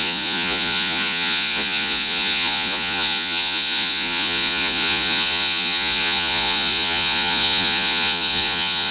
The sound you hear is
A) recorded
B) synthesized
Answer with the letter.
B